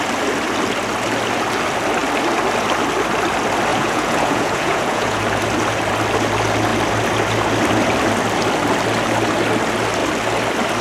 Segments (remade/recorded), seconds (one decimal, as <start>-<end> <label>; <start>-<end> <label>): 0.0-3.7 recorded; 3.7-5.2 remade; 5.2-10.8 recorded

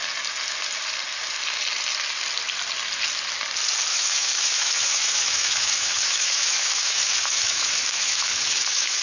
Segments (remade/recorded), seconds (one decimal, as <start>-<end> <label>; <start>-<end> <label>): 0.0-3.9 recorded; 3.9-9.0 remade